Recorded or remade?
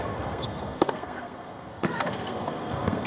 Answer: remade